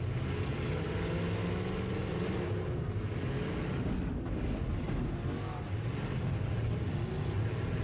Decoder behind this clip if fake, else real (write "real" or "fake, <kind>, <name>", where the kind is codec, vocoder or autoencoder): real